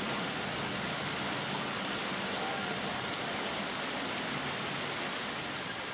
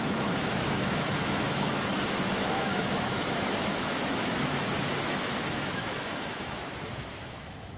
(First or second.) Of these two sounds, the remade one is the second